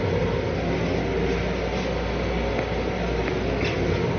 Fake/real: real